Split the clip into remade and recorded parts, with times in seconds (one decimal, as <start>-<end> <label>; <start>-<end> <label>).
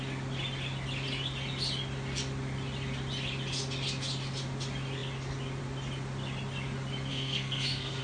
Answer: 0.0-7.1 recorded; 7.1-8.0 remade